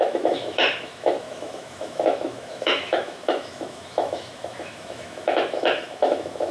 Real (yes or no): no